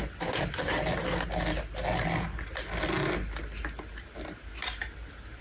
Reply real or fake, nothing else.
real